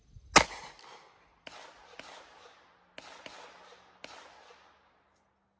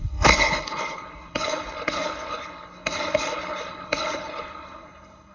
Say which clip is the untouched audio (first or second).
first